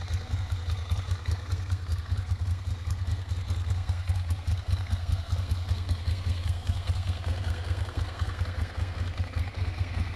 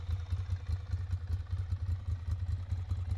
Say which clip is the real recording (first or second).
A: second